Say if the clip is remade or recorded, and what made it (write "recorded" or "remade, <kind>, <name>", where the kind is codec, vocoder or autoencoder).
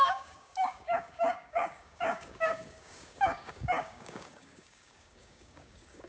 remade, codec, DAC